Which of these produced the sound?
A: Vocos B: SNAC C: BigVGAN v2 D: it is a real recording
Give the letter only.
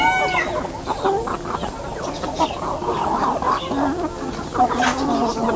D